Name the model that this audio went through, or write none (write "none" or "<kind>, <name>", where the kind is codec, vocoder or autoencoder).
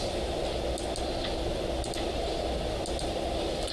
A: none